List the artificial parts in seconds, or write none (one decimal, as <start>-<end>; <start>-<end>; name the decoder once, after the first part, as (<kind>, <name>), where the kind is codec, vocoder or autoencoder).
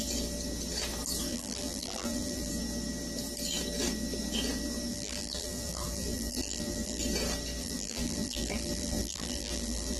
1.3-2.5 (vocoder, BigVGAN v2); 4.9-7.0; 7.6-10.0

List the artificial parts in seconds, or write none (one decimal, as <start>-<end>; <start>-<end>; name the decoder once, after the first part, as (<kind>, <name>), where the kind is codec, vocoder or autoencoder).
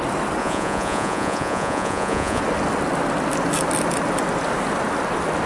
0.4-2.4 (vocoder, Vocos)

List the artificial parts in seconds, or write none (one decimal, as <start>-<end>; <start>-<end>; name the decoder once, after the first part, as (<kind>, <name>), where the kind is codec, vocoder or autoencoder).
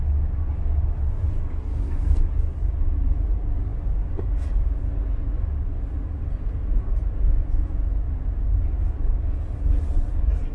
1.7-2.2 (codec, SNAC)